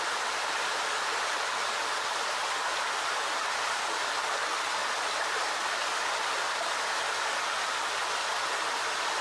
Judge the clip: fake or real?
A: real